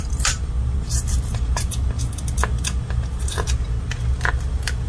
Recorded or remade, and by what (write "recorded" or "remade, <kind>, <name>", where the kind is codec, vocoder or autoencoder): recorded